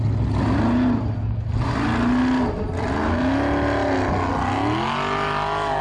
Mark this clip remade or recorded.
recorded